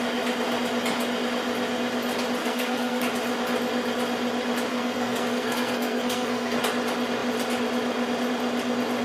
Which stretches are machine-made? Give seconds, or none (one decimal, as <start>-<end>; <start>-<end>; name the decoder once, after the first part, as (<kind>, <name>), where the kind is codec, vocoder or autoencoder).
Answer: 2.4-3.0 (codec, SNAC); 4.7-6.6